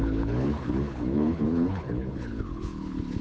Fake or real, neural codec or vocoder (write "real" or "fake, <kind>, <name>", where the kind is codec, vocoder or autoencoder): fake, codec, HILCodec